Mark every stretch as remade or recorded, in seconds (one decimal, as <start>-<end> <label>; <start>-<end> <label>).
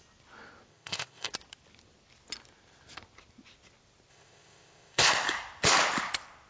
0.0-0.7 recorded; 0.7-1.3 remade; 1.3-4.1 recorded; 4.1-5.1 remade; 5.1-6.5 recorded